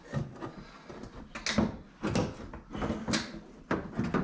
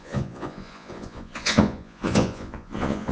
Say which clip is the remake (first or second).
second